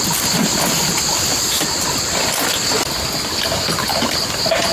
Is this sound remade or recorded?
recorded